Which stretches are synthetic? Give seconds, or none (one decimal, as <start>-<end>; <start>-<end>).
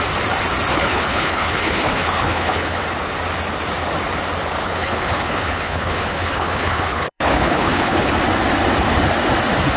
0.7-2.8; 4.6-8.1